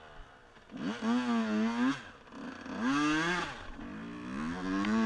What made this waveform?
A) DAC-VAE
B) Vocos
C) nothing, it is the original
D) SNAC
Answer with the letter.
C